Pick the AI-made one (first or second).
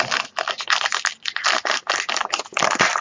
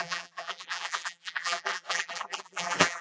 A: second